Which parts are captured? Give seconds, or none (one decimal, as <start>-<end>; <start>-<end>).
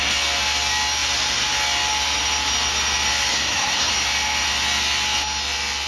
0.0-3.3; 3.9-5.9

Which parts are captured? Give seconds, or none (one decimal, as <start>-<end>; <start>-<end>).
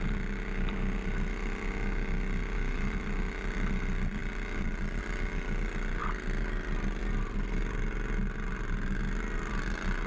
0.0-10.1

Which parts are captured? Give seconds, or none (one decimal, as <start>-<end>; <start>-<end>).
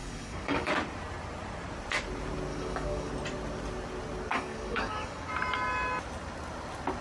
0.7-2.5; 3.1-4.3; 5.3-7.0